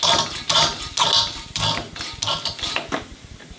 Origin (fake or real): real